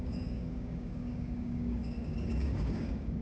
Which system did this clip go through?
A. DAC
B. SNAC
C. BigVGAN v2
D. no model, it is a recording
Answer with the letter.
A